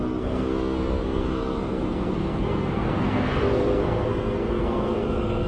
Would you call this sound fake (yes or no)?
yes